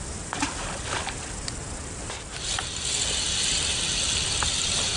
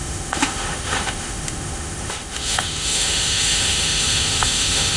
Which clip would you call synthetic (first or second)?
second